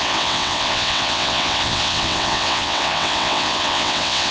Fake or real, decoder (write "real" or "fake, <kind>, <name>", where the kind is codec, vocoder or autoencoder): fake, vocoder, WaveNeXt